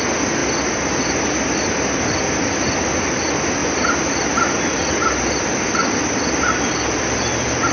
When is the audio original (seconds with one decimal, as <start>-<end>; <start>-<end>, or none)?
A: 0.0-7.7

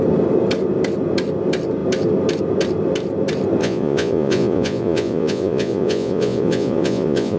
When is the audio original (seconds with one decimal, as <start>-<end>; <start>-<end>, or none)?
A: 0.0-3.6